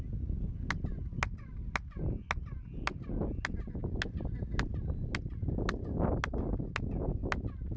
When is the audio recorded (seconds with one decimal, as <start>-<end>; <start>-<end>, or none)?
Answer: 0.0-7.8